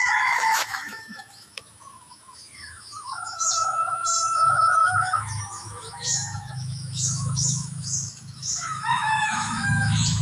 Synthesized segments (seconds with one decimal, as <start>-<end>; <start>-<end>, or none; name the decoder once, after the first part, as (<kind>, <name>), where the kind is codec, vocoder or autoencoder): 0.0-10.2 (autoencoder, DAC-VAE)